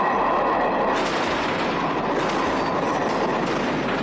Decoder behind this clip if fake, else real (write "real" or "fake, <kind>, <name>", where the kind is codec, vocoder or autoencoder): real